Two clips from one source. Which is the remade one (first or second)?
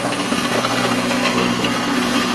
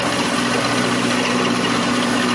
first